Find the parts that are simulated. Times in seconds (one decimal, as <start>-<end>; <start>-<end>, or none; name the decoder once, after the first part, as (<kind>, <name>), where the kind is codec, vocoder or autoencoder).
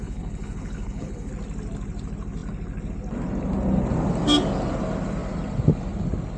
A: 0.0-1.3 (codec, HILCodec)